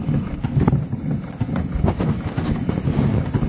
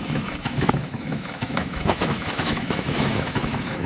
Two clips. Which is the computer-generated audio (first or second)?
second